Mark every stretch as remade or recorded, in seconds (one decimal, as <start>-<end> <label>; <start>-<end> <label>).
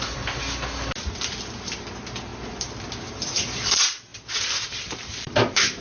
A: 0.0-4.1 recorded; 4.1-5.8 remade